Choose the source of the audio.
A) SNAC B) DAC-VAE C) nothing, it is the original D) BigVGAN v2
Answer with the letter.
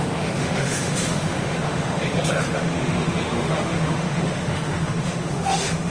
B